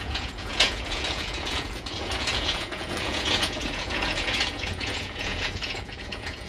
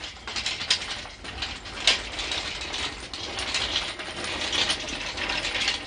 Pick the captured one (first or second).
second